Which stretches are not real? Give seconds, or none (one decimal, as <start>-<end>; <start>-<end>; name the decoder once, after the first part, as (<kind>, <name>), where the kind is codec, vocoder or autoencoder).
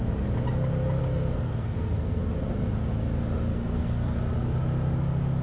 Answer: 1.0-2.2 (codec, SNAC); 3.5-4.2